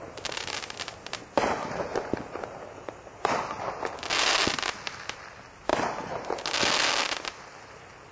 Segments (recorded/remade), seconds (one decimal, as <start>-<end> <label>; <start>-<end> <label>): 0.0-8.1 recorded